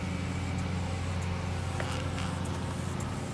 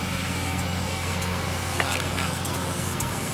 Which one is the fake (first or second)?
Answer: second